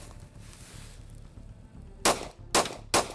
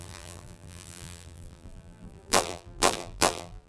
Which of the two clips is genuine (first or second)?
first